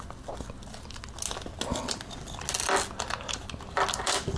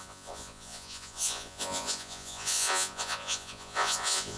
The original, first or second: first